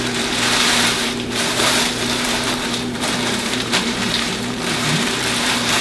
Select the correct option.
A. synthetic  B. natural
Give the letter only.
A